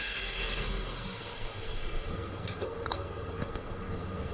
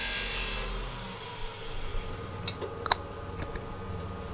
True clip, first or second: second